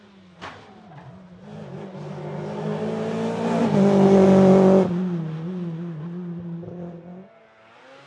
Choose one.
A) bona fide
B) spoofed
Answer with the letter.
A